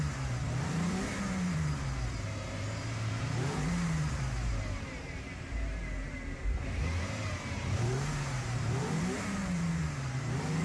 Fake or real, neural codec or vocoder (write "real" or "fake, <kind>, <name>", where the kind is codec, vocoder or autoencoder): fake, vocoder, BigVGAN v2